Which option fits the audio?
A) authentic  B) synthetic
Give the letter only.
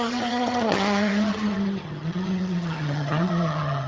B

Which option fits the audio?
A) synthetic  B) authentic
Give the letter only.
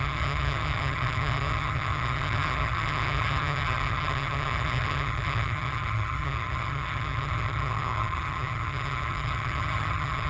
A